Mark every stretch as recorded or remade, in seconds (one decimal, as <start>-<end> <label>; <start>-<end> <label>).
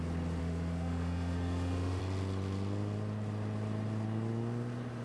0.0-0.4 recorded; 0.4-2.0 remade; 2.0-5.0 recorded